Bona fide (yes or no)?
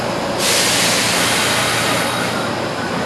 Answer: yes